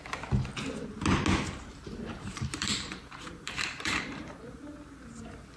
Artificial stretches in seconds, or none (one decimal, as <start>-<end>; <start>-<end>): 1.7-4.6